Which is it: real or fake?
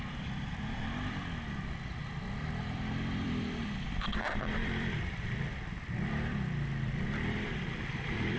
fake